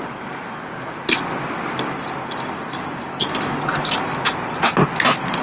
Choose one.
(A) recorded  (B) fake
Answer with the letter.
A